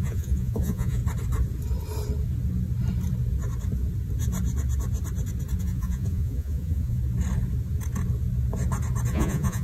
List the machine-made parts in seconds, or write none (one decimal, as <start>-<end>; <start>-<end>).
0.0-1.0; 5.6-7.0; 9.1-9.6